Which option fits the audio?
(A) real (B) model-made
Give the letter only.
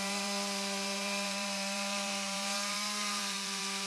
B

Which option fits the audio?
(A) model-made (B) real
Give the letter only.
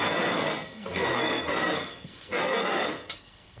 A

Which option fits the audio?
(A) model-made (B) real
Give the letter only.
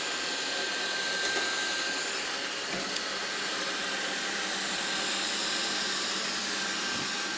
B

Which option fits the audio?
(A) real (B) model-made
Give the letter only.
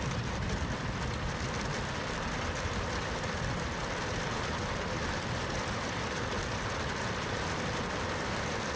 A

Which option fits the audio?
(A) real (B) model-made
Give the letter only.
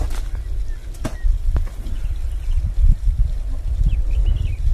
A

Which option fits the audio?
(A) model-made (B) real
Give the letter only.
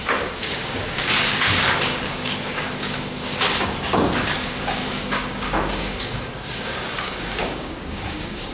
A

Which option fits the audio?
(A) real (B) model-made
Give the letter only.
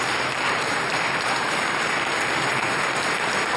B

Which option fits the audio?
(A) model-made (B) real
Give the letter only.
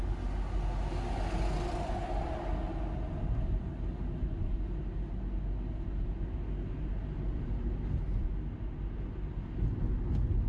B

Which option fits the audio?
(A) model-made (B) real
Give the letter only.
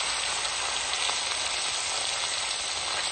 B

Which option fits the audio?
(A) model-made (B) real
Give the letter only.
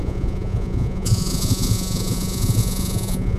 A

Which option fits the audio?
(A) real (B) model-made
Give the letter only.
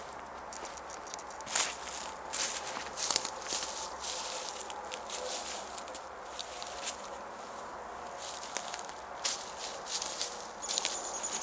A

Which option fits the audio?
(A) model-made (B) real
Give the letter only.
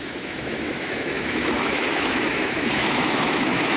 A